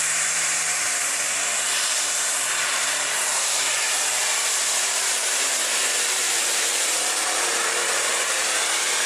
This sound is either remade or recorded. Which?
remade